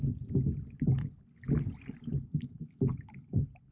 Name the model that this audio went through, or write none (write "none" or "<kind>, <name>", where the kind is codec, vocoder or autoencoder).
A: none